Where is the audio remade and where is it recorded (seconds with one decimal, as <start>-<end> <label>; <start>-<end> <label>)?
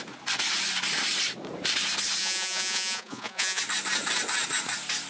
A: 0.0-2.2 recorded; 2.2-3.6 remade; 3.6-5.1 recorded